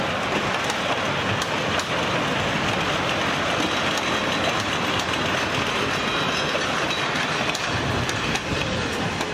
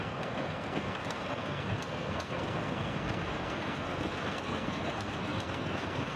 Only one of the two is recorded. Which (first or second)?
first